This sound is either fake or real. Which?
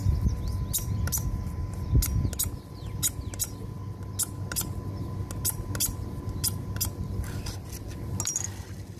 real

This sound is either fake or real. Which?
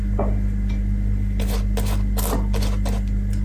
real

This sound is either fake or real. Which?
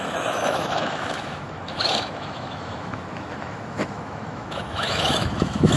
fake